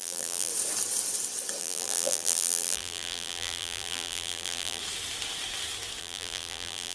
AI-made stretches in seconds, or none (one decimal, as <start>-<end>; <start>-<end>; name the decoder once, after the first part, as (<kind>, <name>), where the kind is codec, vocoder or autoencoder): 0.0-0.5 (vocoder, BigVGAN v2); 1.6-4.8; 6.0-6.9